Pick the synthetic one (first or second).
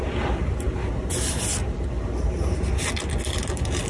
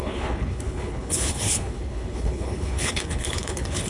second